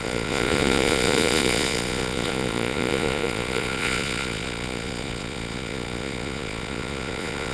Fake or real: fake